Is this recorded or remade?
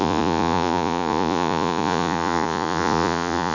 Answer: remade